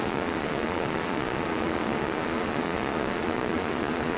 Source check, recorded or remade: remade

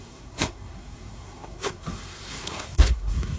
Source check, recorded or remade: remade